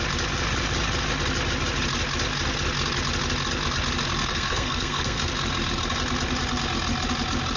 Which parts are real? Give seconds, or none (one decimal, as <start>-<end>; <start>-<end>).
0.0-4.2; 5.3-7.6